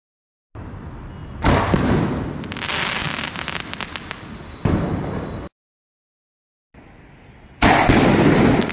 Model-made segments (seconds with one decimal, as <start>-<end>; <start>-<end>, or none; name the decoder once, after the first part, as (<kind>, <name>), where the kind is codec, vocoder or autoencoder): 1.2-1.8 (vocoder, BigVGAN v2)